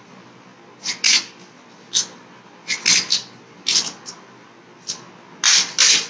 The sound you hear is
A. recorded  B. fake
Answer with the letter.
A